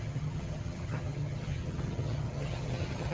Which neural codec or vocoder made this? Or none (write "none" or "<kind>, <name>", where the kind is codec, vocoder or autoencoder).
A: vocoder, HiFi-GAN